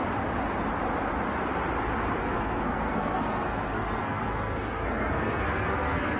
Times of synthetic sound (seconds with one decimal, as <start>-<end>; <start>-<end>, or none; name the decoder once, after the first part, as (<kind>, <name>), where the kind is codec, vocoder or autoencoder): 2.2-6.2 (codec, SNAC)